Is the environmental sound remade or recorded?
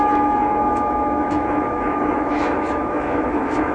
remade